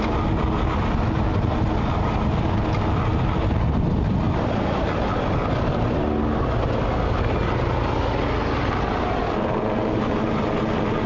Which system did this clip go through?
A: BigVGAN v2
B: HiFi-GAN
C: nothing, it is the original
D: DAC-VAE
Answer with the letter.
C